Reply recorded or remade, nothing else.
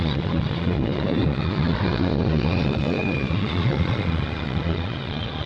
remade